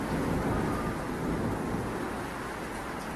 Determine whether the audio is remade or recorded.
recorded